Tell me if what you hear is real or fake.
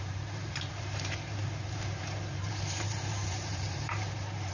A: fake